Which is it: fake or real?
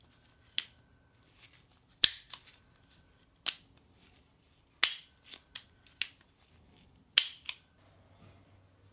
real